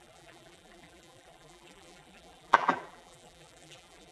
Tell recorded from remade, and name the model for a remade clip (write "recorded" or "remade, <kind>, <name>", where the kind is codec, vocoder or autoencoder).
remade, vocoder, BigVGAN v2